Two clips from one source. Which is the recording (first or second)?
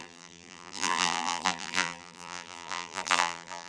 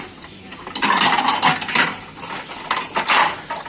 second